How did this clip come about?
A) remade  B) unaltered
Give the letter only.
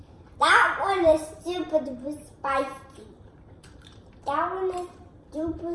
A